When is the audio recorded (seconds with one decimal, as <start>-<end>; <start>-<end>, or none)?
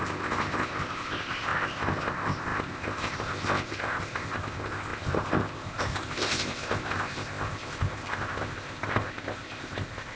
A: none